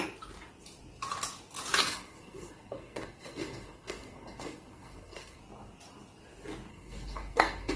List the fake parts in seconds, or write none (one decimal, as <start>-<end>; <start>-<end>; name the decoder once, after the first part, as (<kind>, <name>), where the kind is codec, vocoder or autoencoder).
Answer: 1.8-5.4 (codec, SNAC); 6.7-7.8